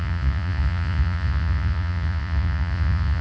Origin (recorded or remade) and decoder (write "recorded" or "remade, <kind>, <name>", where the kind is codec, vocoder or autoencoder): remade, vocoder, Vocos